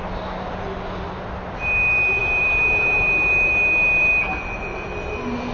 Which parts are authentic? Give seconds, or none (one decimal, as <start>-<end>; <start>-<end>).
0.0-2.2; 4.1-5.5